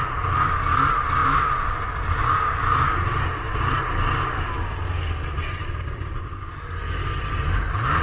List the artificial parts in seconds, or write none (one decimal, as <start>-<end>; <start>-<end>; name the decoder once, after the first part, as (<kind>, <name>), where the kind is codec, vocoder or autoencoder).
none